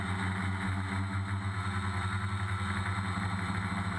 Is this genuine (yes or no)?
yes